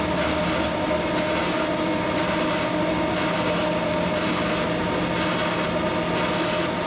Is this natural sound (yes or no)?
yes